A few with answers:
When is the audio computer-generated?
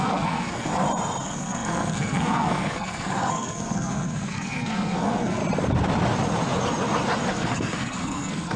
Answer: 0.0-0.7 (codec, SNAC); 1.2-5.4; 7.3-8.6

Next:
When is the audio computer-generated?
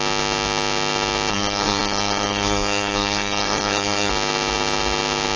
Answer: 1.3-4.1 (codec, SNAC)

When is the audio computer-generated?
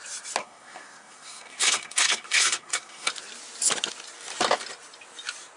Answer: 0.4-3.1 (codec, SNAC)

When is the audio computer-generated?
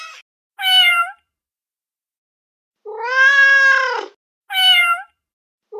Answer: none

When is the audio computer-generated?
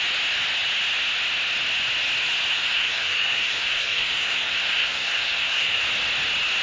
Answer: 2.5-5.8 (codec, SNAC)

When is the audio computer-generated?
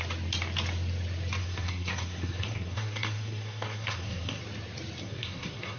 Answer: 1.4-4.4 (codec, SNAC); 5.0-5.8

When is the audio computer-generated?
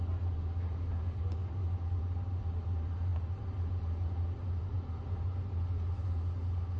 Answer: none